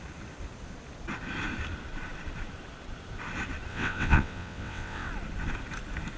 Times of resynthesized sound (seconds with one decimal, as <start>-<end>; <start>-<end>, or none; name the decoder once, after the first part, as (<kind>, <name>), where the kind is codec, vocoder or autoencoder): 3.7-5.1 (vocoder, WaveNeXt)